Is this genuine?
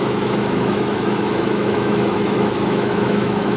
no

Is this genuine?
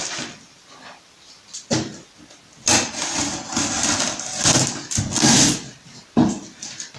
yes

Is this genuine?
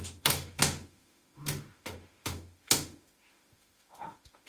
no